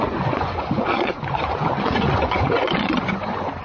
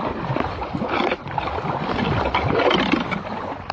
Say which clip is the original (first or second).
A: second